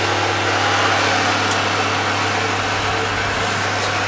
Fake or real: real